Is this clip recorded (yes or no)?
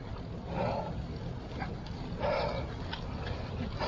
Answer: yes